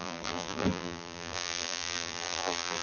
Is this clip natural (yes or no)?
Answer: no